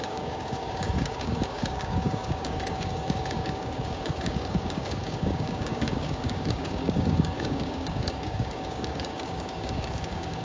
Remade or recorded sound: remade